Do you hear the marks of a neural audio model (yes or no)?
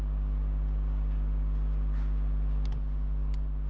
no